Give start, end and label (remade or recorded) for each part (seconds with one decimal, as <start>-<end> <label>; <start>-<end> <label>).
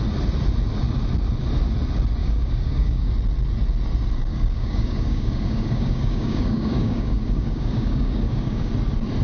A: 0.0-2.2 recorded; 2.2-3.1 remade; 3.1-4.3 recorded; 4.3-8.7 remade; 8.7-9.2 recorded